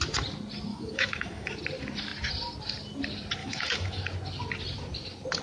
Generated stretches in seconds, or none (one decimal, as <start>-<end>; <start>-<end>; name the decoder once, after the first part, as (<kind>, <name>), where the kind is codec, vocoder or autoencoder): 0.7-1.5 (autoencoder, DAC-VAE); 3.4-4.0